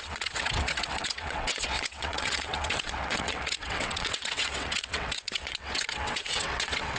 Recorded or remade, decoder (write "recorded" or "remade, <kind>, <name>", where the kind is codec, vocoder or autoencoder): remade, vocoder, WaveNeXt